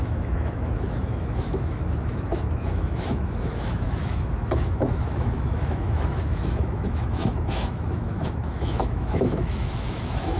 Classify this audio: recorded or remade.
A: remade